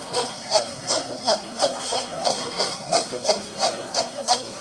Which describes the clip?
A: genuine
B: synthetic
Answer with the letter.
B